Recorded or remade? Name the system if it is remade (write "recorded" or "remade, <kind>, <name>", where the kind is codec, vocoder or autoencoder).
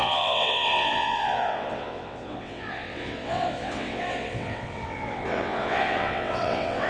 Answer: remade, vocoder, WaveNeXt